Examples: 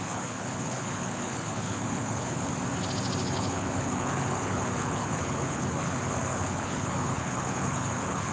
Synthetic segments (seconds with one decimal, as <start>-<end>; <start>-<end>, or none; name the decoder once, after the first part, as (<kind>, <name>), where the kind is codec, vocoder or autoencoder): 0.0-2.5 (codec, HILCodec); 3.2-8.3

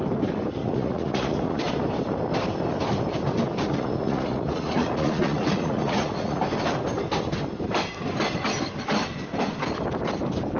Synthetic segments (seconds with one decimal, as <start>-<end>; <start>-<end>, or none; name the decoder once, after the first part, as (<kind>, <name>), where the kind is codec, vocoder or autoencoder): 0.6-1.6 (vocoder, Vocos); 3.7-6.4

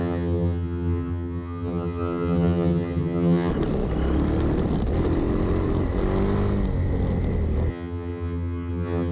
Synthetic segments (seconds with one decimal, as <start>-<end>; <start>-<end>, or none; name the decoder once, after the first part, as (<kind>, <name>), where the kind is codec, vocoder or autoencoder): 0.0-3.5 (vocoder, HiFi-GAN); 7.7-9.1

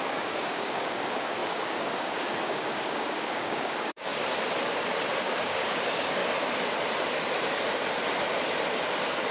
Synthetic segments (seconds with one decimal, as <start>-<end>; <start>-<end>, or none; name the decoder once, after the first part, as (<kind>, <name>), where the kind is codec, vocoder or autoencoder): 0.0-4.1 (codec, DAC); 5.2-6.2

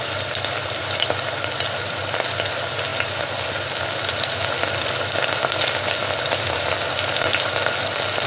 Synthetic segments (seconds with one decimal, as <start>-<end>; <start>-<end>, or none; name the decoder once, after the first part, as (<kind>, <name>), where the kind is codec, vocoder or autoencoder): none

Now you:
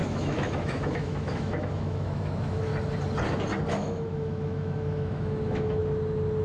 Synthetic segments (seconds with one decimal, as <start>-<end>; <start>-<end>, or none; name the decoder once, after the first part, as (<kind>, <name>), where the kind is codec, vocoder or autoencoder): 0.0-2.7 (autoencoder, DAC-VAE); 3.7-5.8